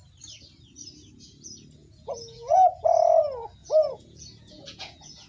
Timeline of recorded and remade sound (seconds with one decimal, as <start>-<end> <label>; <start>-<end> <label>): 0.0-1.8 recorded; 1.8-2.9 remade; 2.9-3.6 recorded; 3.6-5.3 remade